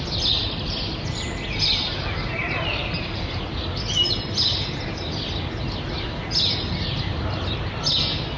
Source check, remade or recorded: recorded